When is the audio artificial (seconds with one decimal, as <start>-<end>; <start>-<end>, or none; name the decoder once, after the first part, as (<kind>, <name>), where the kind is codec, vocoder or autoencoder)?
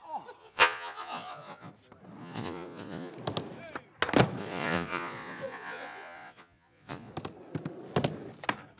0.4-1.7 (vocoder, Vocos); 2.2-3.1; 4.4-7.1